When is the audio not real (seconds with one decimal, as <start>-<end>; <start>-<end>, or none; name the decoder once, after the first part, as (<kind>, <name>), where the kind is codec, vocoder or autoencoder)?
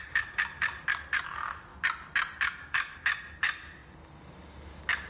0.0-1.7 (vocoder, BigVGAN v2); 2.4-3.8